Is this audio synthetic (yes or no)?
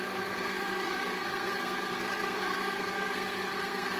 yes